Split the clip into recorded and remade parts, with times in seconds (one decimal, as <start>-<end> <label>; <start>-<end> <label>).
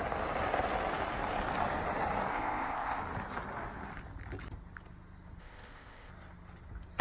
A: 0.0-2.3 recorded; 2.3-3.0 remade; 3.0-5.4 recorded; 5.4-6.1 remade; 6.1-7.0 recorded